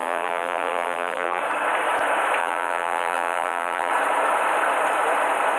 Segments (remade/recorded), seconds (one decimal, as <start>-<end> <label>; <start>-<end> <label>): 0.0-1.4 remade; 1.4-2.4 recorded; 2.4-3.9 remade; 3.9-5.6 recorded